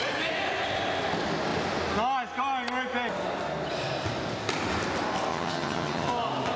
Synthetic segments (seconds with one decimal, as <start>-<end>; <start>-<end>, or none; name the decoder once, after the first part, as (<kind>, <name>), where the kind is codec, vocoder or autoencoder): 5.3-6.1 (vocoder, HiFi-GAN)